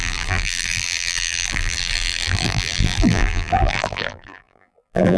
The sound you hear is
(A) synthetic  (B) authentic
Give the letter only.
A